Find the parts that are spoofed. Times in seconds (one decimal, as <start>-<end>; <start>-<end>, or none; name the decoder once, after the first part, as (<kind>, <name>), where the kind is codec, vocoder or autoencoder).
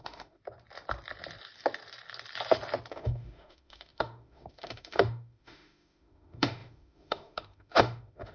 0.0-0.4 (autoencoder, DAC-VAE); 2.9-8.3